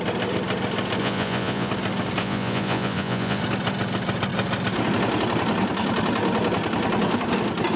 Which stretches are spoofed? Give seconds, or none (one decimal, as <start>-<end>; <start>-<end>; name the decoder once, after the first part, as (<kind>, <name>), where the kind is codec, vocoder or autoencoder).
1.0-1.7 (vocoder, Vocos); 2.2-3.4